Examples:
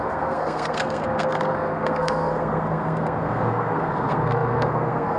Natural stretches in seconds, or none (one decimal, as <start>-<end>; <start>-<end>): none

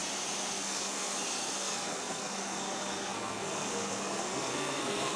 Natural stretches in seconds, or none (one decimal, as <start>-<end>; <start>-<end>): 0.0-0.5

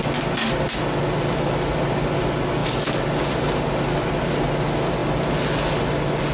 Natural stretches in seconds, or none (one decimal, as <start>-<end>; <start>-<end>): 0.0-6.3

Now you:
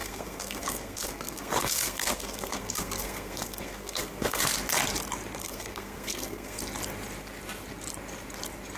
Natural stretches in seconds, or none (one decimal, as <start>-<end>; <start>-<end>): 4.4-5.4; 6.6-8.8

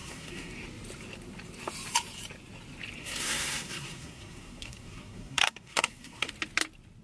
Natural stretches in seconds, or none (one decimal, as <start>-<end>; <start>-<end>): 0.5-3.0; 6.3-7.0

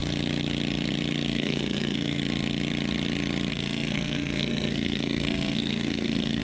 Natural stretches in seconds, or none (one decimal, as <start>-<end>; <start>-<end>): 0.0-1.3; 2.2-3.5

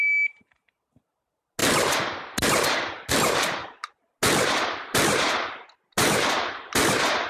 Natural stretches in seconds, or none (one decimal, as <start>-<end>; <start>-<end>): 0.0-7.3